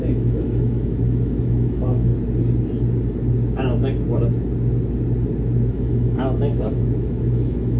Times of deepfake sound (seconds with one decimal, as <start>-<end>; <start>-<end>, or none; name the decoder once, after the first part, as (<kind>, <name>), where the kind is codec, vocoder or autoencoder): 0.0-2.1 (autoencoder, DAC-VAE); 5.7-7.8